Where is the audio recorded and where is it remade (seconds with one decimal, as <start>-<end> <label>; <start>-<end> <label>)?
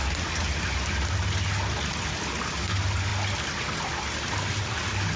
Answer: 0.0-5.2 recorded